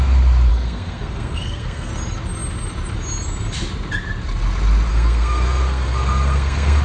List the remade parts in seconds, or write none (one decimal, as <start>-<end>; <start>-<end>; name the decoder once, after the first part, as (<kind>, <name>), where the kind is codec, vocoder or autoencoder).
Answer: 0.5-1.9 (codec, SNAC); 4.9-6.8